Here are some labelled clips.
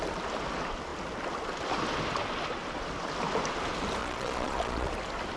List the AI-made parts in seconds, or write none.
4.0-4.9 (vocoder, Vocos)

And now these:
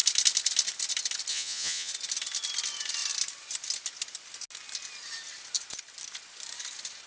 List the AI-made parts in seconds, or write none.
1.3-1.9 (vocoder, Vocos)

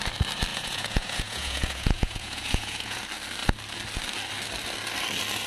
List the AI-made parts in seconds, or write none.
0.5-3.0 (vocoder, Vocos)

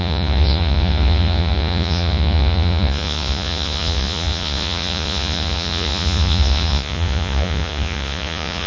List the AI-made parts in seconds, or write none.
0.0-8.7 (vocoder, Vocos)

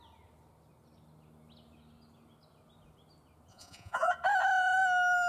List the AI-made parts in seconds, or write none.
3.5-4.1 (vocoder, Vocos)

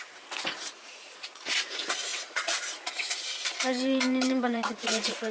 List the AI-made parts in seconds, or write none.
0.0-5.3 (vocoder, Vocos)